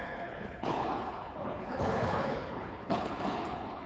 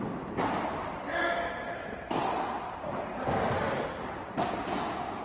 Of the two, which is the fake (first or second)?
first